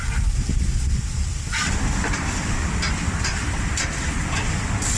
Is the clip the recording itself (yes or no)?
no